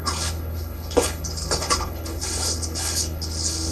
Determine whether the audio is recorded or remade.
remade